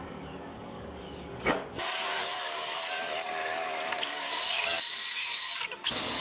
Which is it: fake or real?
fake